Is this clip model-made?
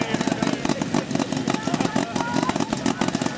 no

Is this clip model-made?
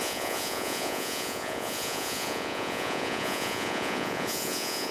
yes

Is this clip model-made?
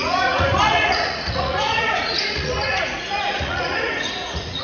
yes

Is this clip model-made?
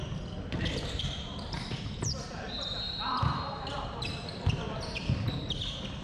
yes